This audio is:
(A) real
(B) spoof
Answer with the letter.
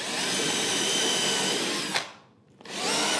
B